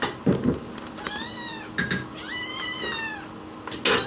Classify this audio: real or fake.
real